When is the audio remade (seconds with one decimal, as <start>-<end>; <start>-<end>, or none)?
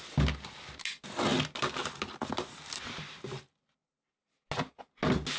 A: none